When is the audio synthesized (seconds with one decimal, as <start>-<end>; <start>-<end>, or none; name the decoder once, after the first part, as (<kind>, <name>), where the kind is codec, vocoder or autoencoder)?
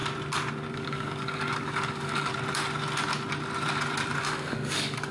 0.7-2.3 (codec, DAC); 4.2-5.1